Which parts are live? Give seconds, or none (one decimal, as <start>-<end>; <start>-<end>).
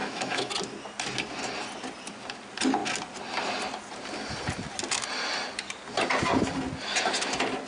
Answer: 0.5-7.7